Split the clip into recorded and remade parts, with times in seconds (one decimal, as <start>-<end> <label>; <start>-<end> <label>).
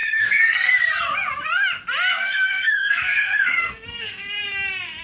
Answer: 0.0-0.7 remade; 0.7-2.1 recorded; 2.1-4.4 remade; 4.4-5.0 recorded